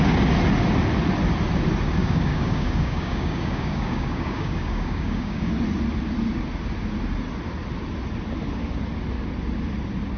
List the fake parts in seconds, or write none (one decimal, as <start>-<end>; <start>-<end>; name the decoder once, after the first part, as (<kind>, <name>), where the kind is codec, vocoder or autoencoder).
2.0-5.5 (codec, DAC)